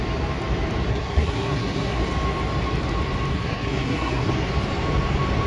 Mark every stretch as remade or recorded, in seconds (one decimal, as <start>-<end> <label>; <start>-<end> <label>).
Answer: 0.0-0.9 recorded; 0.9-2.0 remade; 2.0-3.3 recorded; 3.3-4.3 remade; 4.3-5.5 recorded